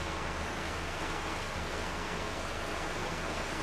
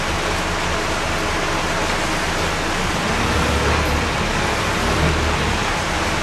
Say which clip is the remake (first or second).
first